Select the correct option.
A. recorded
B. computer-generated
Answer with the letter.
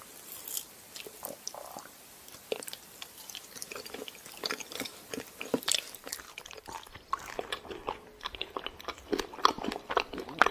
B